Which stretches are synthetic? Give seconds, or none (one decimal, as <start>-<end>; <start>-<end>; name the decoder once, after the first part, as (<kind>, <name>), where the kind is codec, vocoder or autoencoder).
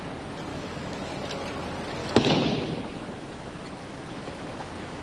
0.5-1.1 (autoencoder, DAC-VAE); 2.0-5.0